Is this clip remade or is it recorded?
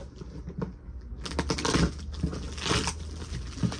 recorded